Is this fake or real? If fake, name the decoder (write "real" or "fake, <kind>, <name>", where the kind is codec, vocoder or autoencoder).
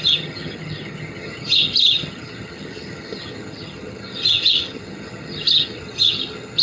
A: fake, vocoder, HiFi-GAN